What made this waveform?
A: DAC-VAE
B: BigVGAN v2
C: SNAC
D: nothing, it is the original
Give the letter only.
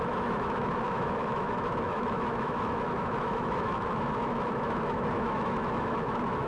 A